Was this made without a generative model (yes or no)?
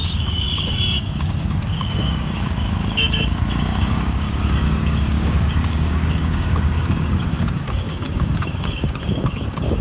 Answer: no